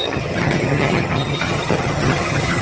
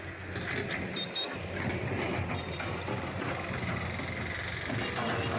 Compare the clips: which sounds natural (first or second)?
second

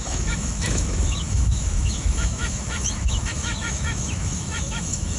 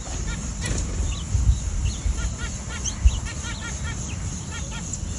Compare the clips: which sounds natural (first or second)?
second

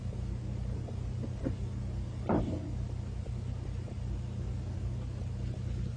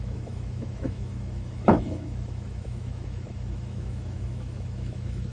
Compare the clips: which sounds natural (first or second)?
first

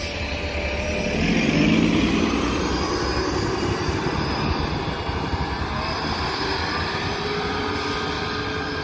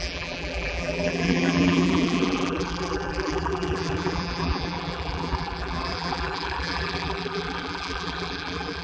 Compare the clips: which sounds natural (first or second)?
first